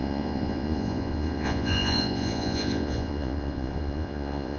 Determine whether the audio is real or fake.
fake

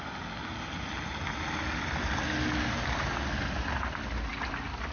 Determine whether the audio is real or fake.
real